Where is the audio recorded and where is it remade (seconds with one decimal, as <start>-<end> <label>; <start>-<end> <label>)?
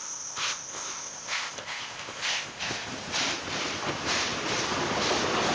0.0-2.9 remade; 2.9-5.5 recorded